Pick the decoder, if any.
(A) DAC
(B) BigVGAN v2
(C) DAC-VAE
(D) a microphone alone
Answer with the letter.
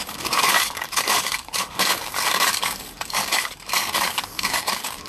A